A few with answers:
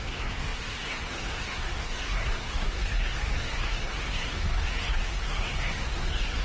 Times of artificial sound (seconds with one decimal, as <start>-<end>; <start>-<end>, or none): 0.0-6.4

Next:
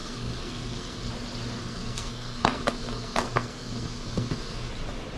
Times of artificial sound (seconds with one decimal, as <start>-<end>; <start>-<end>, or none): 0.0-1.1; 1.6-4.7

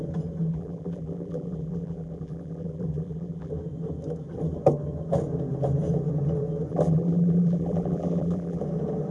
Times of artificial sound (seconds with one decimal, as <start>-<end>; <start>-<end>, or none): 0.5-3.5; 6.7-8.6

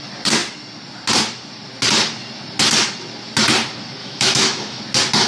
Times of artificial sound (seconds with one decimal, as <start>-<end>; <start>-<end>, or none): 4.0-4.8

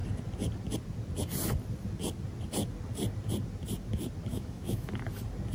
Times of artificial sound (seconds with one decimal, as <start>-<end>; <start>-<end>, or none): 4.3-4.9

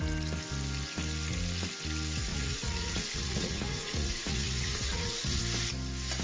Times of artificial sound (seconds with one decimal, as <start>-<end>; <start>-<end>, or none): 2.3-5.4

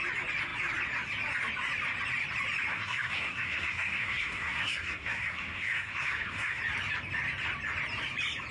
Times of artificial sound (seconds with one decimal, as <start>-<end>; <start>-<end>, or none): 2.7-6.6